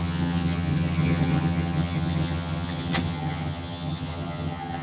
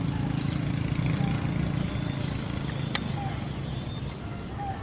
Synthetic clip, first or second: first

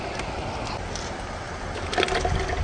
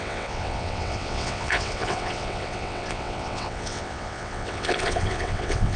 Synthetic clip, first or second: second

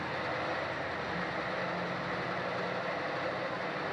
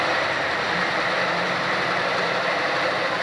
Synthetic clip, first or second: second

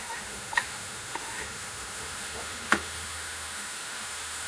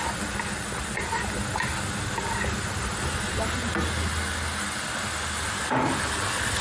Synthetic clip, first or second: first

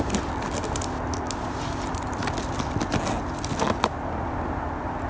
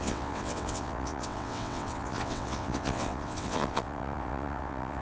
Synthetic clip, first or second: second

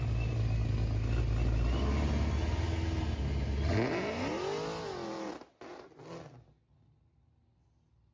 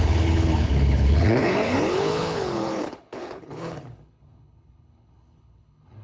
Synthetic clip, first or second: second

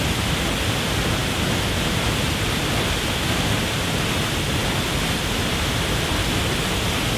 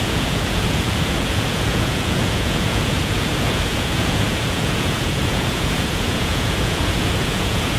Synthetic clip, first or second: second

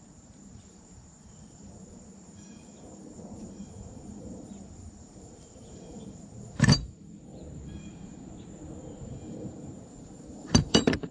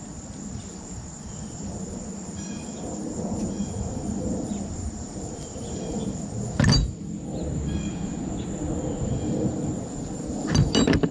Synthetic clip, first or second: first